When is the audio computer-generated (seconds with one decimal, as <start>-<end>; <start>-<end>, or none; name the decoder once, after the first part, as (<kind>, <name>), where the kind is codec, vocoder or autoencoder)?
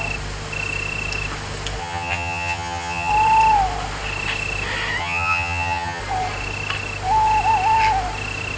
1.8-3.1 (vocoder, HiFi-GAN); 5.0-6.0